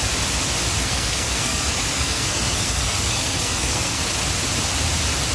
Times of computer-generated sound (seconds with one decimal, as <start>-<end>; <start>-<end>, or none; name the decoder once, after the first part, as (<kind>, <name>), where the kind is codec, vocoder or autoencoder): 0.8-4.0 (codec, SNAC)

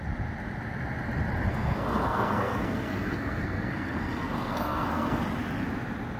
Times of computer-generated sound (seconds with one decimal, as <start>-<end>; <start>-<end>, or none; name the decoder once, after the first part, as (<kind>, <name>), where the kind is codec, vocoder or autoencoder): 1.5-5.2 (codec, SNAC)

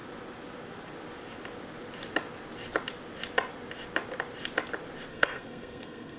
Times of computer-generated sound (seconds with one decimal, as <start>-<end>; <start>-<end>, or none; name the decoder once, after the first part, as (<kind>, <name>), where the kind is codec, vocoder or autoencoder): 5.1-6.2 (codec, SNAC)

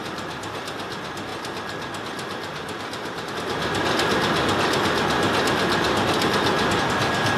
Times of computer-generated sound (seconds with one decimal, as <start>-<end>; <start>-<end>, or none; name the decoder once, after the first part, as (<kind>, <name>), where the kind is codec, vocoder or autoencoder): none

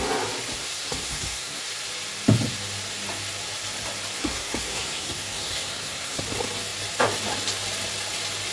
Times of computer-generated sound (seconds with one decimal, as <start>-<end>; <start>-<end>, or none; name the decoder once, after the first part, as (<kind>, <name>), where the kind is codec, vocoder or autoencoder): 0.6-1.6 (codec, SNAC); 4.2-6.2